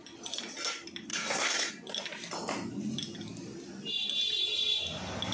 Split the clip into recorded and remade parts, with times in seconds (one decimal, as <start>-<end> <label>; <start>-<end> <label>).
0.0-1.1 recorded; 1.1-1.7 remade; 1.7-5.3 recorded